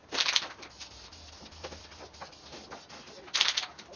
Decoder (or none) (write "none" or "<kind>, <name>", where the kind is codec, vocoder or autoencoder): none